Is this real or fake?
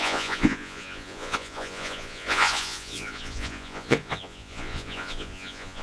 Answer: fake